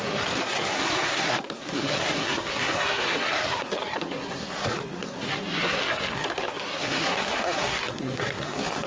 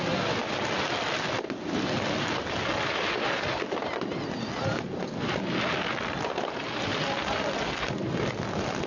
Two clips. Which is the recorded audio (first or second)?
second